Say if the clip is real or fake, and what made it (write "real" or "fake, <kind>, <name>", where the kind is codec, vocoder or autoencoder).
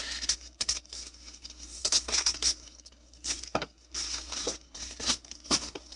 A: fake, codec, SNAC